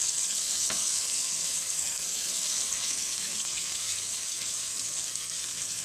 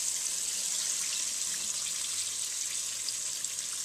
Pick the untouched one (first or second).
second